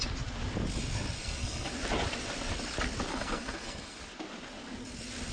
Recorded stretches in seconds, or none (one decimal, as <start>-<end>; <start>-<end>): 0.0-1.2; 1.7-3.1; 4.0-5.3

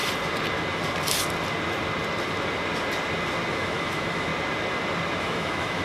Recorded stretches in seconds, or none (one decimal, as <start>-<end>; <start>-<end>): 0.0-3.5; 4.3-5.2

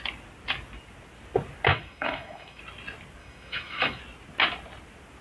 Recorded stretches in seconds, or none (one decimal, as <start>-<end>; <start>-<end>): 0.0-1.7; 2.6-3.2; 4.0-5.2